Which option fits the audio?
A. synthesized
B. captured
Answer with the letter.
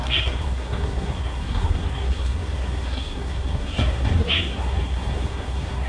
A